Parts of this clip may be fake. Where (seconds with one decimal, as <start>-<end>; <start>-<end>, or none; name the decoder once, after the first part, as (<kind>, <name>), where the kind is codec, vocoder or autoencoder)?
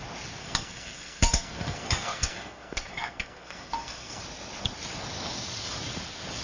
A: 0.4-4.2 (codec, SNAC)